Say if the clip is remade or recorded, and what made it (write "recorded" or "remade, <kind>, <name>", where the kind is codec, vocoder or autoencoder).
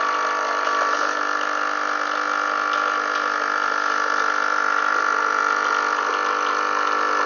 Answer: recorded